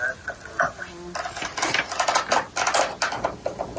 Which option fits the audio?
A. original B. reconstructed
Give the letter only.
A